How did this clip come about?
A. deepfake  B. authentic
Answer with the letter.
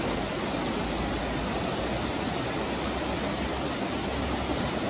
B